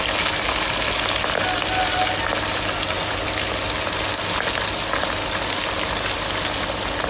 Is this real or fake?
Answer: real